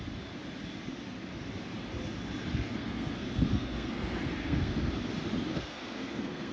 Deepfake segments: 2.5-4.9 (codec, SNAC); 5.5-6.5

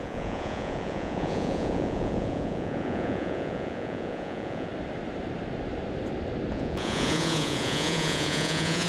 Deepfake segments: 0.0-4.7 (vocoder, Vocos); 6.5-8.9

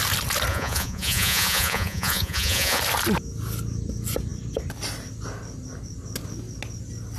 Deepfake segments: 0.5-2.8 (vocoder, Vocos)

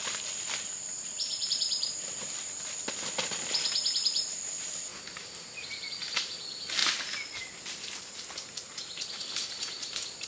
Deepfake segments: 0.0-6.8 (vocoder, BigVGAN v2); 7.4-10.3

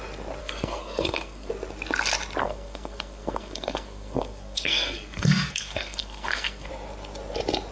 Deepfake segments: 0.4-1.5 (codec, SNAC); 2.4-6.7